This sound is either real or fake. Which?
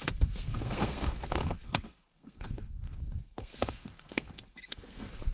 fake